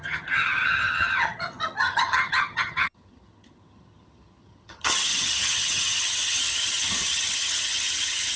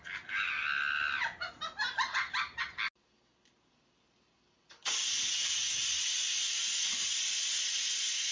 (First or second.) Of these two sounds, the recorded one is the second